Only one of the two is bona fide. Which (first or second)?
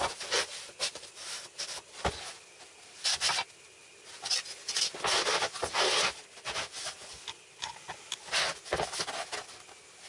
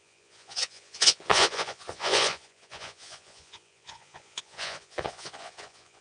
first